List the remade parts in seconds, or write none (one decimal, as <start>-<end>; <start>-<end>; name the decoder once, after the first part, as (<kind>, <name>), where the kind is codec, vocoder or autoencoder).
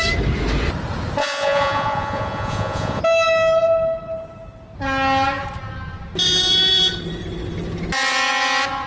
1.2-3.0 (vocoder, Vocos)